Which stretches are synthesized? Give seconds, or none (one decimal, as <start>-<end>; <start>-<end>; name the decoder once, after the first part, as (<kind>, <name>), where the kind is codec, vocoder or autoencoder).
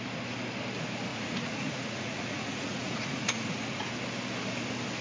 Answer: 1.1-3.9 (vocoder, Vocos)